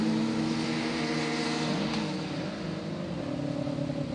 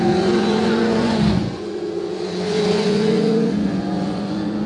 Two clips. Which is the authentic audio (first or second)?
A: first